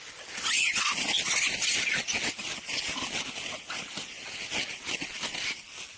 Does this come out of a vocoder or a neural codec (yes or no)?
no